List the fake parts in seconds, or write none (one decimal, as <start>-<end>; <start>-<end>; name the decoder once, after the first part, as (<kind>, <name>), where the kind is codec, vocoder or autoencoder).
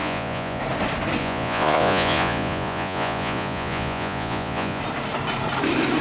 0.0-0.6 (vocoder, Vocos); 1.2-4.8